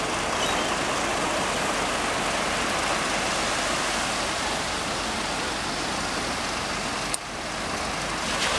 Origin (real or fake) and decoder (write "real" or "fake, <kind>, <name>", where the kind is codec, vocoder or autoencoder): real